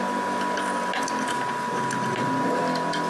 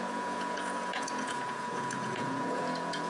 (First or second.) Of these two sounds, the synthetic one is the second